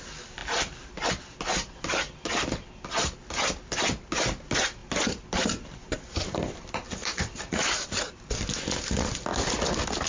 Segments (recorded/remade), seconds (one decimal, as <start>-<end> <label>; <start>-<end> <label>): 0.0-0.4 recorded; 0.4-1.1 remade; 1.1-4.8 recorded; 4.8-8.0 remade; 8.0-10.1 recorded